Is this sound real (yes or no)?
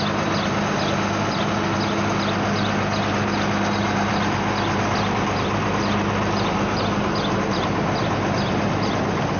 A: yes